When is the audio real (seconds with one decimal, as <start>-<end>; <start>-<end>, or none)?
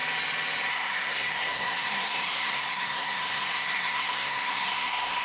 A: 0.0-0.7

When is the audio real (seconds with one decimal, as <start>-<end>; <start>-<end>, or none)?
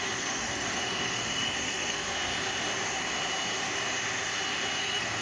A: 2.3-4.8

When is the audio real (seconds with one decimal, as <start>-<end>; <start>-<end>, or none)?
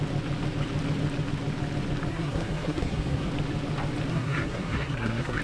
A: 0.0-2.1; 3.3-4.1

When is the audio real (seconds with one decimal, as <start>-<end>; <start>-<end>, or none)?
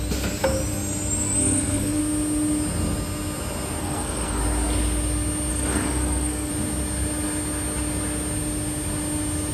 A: 0.0-1.4; 2.0-3.8; 4.4-5.5; 6.5-9.5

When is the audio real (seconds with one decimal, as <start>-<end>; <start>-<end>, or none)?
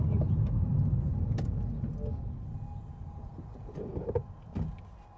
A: 0.0-5.2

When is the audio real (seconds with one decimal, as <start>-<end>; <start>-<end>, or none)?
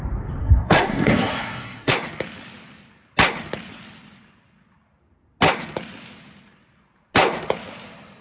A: 0.0-0.4; 1.9-8.2